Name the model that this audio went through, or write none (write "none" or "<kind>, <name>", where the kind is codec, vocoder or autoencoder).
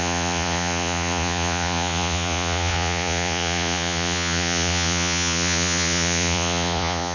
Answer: vocoder, Vocos